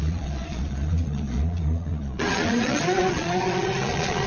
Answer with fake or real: fake